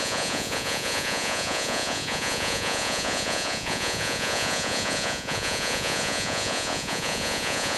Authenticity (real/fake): fake